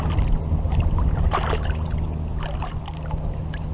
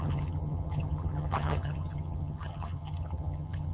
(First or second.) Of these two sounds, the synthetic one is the second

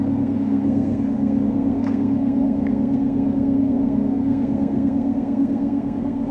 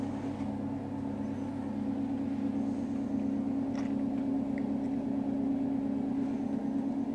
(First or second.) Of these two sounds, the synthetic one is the first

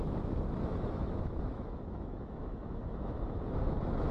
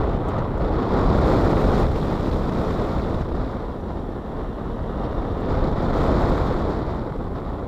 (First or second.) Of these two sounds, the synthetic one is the first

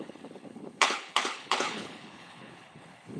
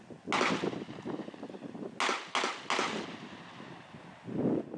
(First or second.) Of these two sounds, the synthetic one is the first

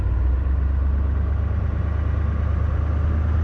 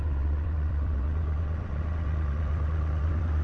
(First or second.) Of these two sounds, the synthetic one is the second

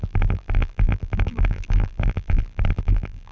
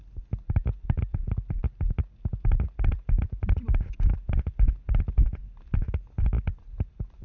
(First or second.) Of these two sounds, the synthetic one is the first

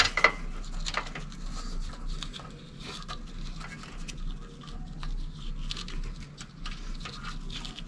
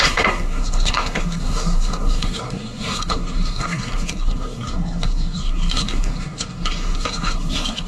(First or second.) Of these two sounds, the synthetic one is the second